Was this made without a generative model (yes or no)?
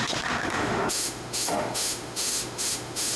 no